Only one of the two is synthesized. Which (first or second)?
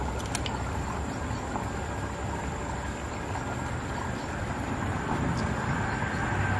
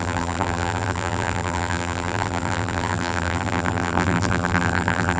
second